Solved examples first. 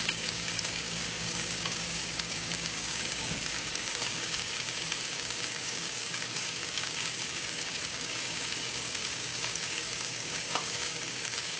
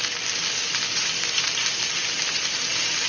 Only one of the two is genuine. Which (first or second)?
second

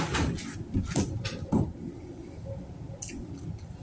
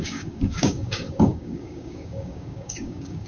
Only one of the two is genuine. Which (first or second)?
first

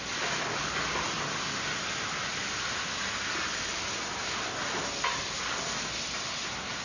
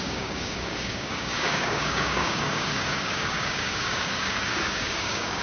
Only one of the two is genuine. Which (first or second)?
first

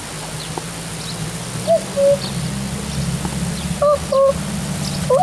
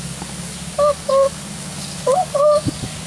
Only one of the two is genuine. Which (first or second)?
first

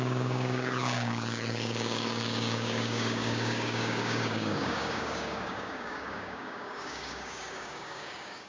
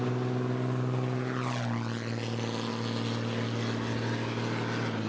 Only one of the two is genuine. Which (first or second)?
second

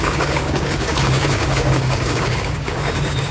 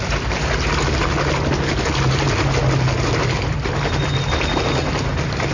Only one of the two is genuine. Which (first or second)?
second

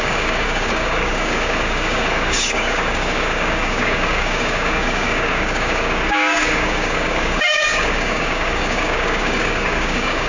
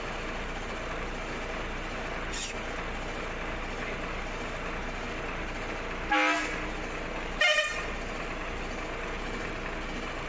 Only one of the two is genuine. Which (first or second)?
second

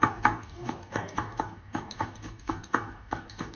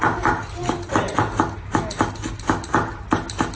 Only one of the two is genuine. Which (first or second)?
second